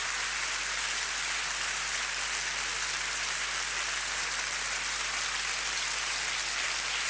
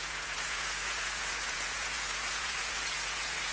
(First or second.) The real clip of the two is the first